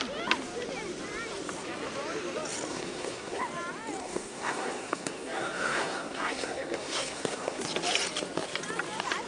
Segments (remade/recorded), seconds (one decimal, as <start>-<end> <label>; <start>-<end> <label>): 0.0-2.7 recorded; 2.7-3.4 remade; 3.4-4.0 recorded; 4.0-7.6 remade; 7.6-9.3 recorded